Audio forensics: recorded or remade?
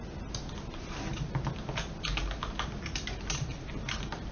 recorded